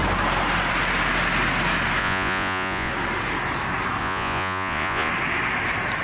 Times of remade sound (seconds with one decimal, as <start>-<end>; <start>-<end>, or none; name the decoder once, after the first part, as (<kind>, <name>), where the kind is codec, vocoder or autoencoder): 2.0-2.9 (vocoder, Vocos); 4.0-5.1